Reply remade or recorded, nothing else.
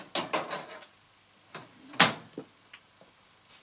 recorded